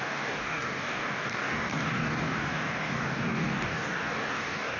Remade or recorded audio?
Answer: remade